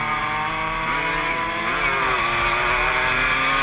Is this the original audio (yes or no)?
yes